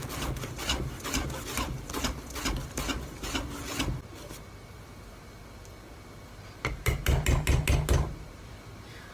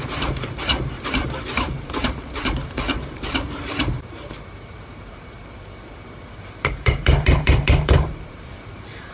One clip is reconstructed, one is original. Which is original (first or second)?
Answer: first